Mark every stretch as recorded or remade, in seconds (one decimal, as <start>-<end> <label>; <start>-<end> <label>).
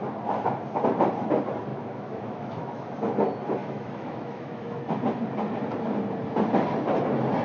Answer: 0.0-1.7 recorded; 1.7-2.9 remade; 2.9-3.6 recorded; 3.6-4.8 remade; 4.8-7.4 recorded